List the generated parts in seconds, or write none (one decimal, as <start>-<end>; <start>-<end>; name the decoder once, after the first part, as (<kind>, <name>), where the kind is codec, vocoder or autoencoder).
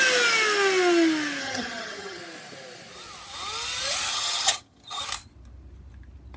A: 1.4-2.2 (vocoder, HiFi-GAN); 4.1-5.0